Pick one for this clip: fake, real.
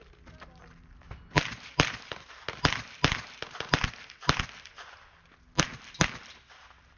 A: real